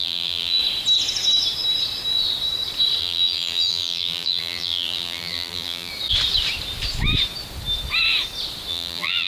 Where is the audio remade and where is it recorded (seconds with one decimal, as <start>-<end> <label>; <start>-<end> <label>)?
0.0-0.6 remade; 0.6-3.0 recorded; 3.0-5.9 remade; 5.9-8.7 recorded; 8.7-9.3 remade